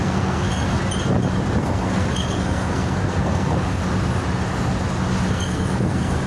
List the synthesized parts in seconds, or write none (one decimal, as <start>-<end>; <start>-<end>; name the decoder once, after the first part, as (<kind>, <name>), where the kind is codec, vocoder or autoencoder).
0.0-0.8 (codec, SNAC); 1.6-3.8; 5.3-6.3